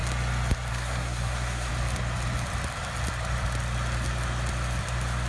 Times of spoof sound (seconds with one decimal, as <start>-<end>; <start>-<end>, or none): 0.7-1.7